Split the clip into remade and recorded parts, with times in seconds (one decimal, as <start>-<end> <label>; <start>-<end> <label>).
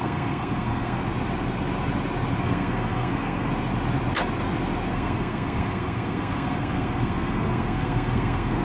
0.0-1.0 remade; 1.0-2.4 recorded; 2.4-3.5 remade; 3.5-4.9 recorded; 4.9-8.6 remade